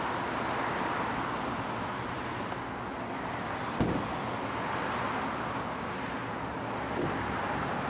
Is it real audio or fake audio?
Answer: real